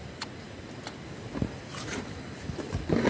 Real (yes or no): yes